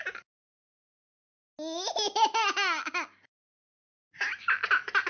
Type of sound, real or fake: real